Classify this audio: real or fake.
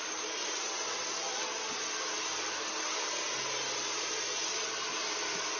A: real